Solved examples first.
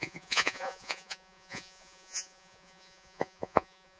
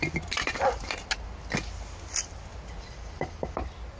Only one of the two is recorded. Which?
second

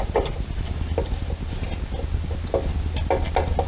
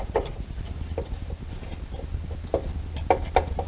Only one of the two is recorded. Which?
first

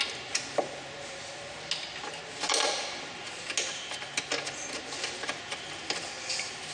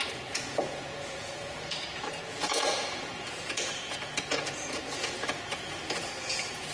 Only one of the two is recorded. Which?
first